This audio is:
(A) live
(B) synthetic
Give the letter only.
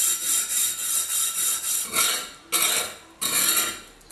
A